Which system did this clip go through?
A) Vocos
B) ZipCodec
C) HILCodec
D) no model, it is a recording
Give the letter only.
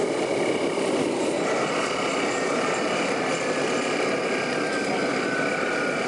D